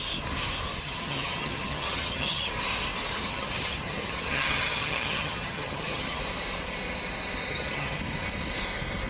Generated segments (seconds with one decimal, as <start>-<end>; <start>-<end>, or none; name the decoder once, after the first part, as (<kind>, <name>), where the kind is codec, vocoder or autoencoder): 0.8-2.5 (vocoder, HiFi-GAN); 3.2-6.2; 7.5-8.0